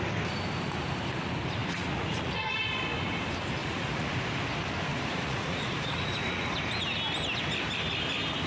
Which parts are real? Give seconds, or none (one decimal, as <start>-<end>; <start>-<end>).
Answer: 0.0-1.6; 2.6-3.6; 4.2-4.9; 6.5-8.5